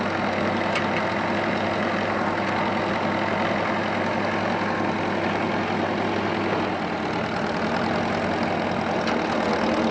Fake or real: real